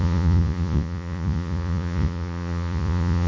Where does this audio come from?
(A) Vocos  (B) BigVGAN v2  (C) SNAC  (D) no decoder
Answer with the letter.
A